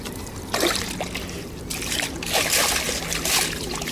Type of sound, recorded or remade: recorded